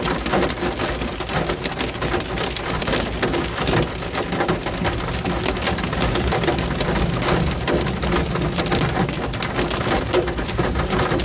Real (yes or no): yes